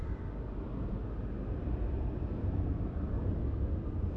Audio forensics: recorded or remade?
recorded